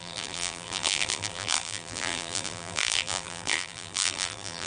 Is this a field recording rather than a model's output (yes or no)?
no